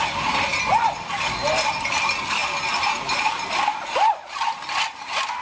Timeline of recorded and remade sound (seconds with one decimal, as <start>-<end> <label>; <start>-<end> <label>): 0.0-5.4 recorded